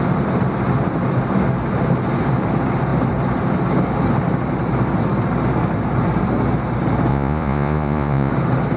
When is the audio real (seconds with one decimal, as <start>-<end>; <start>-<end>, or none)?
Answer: 0.0-7.1; 8.3-8.8